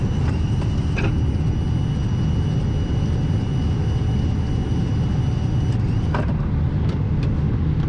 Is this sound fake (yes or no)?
no